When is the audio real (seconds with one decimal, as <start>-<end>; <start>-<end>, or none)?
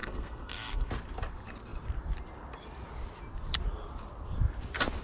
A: 0.9-5.0